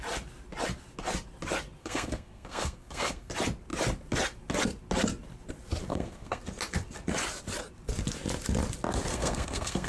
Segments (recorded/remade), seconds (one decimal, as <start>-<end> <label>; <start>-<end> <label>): 0.0-1.8 recorded; 1.8-3.3 remade; 3.3-5.9 recorded; 5.9-6.4 remade; 6.4-9.1 recorded; 9.1-9.9 remade